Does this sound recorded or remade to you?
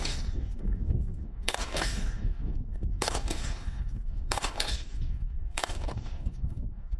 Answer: remade